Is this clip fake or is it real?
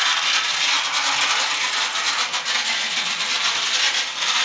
real